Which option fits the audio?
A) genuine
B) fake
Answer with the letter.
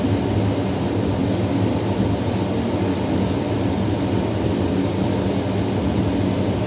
A